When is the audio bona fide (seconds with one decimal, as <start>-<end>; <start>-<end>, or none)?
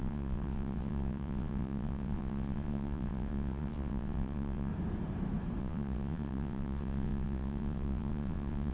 4.7-5.6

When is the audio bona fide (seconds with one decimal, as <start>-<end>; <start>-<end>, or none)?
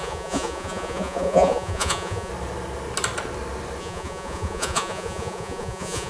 2.3-3.8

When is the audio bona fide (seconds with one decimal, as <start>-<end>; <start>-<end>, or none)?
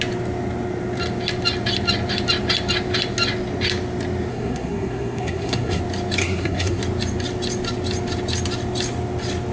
0.0-4.3; 5.8-6.2; 6.8-9.5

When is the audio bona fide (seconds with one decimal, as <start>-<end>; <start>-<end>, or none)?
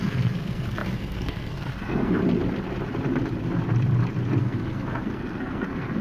2.2-4.4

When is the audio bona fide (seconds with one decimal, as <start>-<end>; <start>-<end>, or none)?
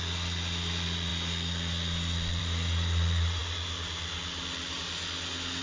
0.0-5.6